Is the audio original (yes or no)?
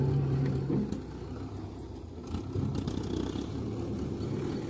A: yes